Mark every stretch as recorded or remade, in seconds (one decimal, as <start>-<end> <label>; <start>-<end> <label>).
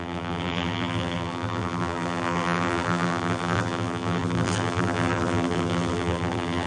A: 0.0-6.7 remade